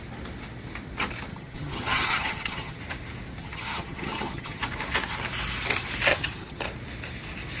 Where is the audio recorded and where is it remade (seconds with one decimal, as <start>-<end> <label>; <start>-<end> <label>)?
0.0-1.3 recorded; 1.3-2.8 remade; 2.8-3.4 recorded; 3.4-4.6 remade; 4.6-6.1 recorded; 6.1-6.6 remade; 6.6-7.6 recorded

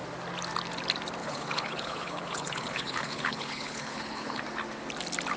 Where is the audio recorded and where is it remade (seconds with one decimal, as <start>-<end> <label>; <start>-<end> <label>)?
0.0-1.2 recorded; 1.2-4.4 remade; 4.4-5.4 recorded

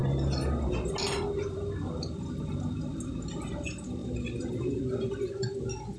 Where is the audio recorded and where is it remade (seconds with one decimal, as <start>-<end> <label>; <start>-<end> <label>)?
0.0-4.0 recorded; 4.0-4.8 remade; 4.8-6.0 recorded